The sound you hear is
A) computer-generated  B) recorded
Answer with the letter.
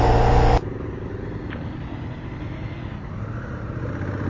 B